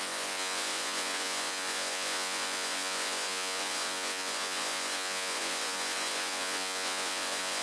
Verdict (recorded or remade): remade